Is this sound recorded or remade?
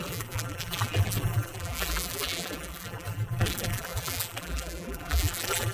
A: remade